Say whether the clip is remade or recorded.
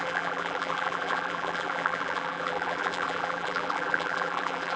remade